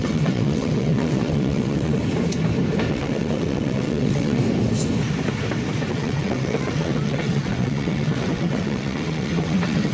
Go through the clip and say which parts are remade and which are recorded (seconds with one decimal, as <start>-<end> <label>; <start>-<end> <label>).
0.0-2.0 remade; 2.0-2.9 recorded; 2.9-4.4 remade; 4.4-5.9 recorded; 5.9-9.9 remade